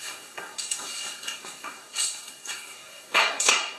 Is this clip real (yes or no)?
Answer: no